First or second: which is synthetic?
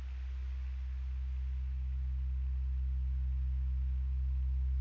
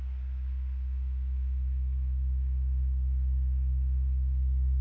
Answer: second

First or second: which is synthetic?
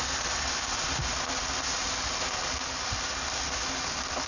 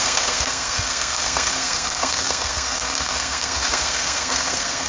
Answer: second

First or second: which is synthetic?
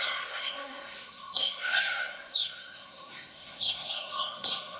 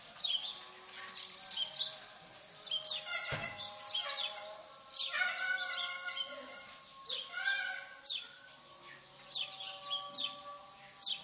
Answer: first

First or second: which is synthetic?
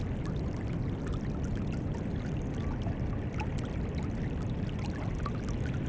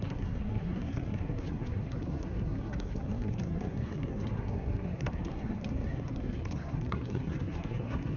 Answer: second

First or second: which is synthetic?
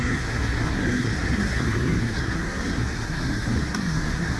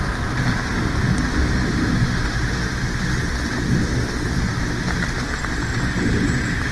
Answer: first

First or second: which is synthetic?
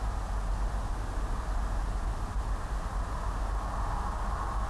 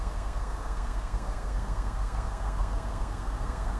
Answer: second